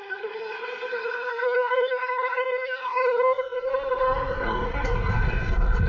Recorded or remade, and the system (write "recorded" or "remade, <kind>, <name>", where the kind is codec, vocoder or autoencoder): remade, codec, SNAC